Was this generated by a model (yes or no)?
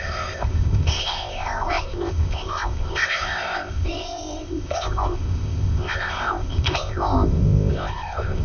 yes